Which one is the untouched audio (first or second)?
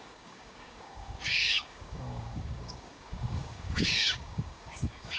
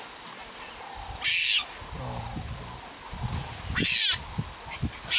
second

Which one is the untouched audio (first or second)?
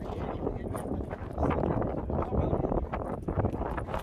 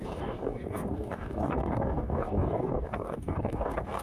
first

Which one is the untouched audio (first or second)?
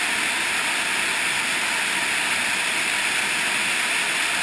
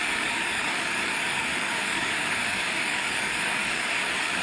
first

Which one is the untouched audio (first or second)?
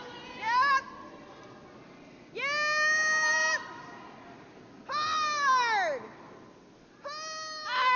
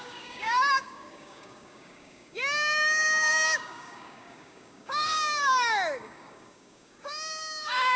first